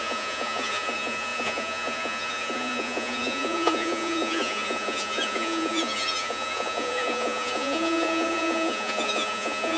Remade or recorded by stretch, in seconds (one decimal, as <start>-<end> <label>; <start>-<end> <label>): 0.0-9.8 remade